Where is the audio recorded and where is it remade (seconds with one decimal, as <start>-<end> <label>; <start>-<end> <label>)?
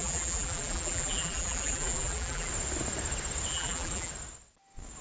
0.0-2.5 remade; 2.5-3.5 recorded; 3.5-4.1 remade; 4.1-5.0 recorded